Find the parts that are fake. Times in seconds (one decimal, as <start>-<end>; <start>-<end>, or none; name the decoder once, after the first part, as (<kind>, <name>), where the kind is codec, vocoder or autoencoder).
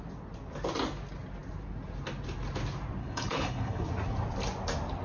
3.0-3.9 (codec, HILCodec)